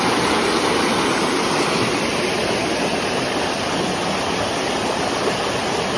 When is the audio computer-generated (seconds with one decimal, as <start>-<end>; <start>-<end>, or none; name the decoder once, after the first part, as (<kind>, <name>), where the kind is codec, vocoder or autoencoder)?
none